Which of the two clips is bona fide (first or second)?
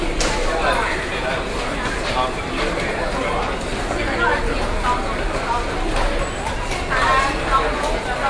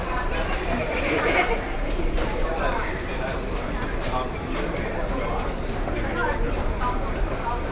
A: first